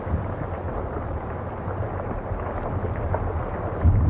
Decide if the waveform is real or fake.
real